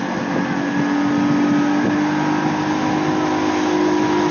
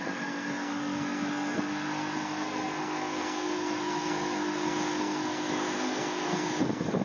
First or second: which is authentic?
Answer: first